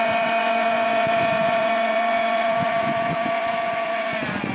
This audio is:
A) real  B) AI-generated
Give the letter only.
B